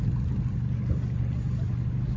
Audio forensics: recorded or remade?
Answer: recorded